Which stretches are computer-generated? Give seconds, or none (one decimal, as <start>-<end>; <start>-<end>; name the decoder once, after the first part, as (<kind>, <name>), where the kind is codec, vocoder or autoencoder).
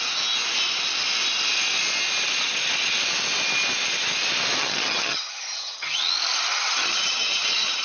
4.6-6.0 (vocoder, HiFi-GAN); 6.5-7.8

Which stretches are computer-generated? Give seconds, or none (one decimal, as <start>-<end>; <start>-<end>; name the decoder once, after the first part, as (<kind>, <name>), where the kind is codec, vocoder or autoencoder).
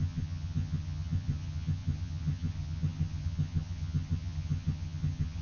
0.0-5.4 (vocoder, HiFi-GAN)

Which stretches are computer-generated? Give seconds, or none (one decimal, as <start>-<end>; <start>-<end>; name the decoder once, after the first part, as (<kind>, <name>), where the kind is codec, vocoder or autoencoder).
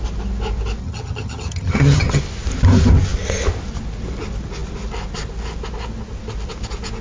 0.8-2.2 (vocoder, HiFi-GAN)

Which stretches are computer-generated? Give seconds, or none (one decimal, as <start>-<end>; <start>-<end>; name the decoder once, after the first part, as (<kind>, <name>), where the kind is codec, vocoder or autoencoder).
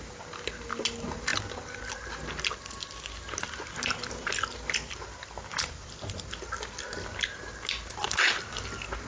none